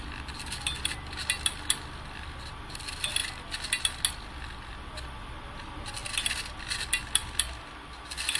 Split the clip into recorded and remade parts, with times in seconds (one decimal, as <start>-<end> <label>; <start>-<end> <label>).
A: 0.0-3.2 remade; 3.2-4.7 recorded; 4.7-6.0 remade; 6.0-6.6 recorded; 6.6-8.4 remade